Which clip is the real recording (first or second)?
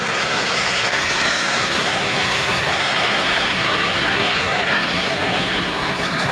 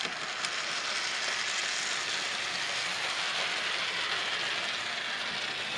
second